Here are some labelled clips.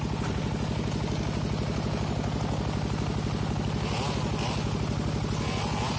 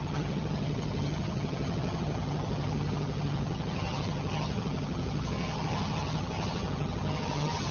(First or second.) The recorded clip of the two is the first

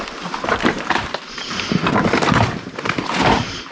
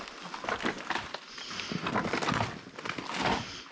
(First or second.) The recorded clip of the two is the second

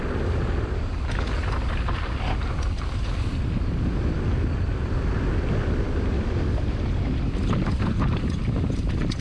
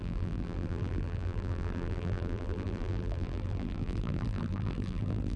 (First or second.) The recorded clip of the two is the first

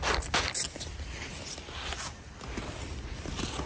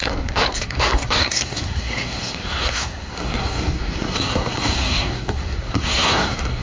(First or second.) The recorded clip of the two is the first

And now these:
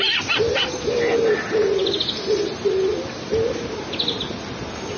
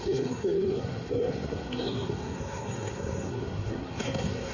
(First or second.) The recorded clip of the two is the first